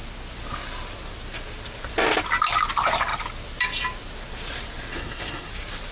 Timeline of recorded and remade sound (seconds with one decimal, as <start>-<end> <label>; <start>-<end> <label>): 0.0-4.9 recorded; 4.9-5.5 remade; 5.5-5.9 recorded